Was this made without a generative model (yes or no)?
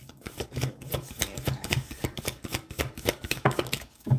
no